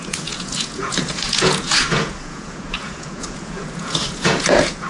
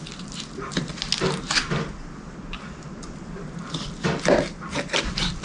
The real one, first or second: second